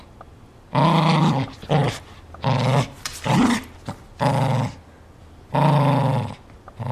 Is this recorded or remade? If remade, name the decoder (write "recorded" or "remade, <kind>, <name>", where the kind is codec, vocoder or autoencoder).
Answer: recorded